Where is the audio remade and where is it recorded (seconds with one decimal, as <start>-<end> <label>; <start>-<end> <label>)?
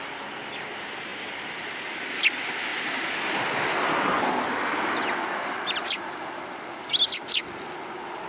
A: 0.0-8.3 recorded